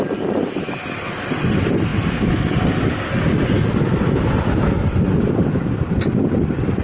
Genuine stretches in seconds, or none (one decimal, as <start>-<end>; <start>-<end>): 0.0-6.8